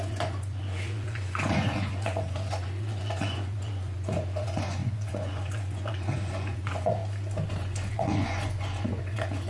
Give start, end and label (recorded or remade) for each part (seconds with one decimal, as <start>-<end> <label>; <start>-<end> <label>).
0.0-7.0 remade; 7.0-7.5 recorded; 7.5-9.5 remade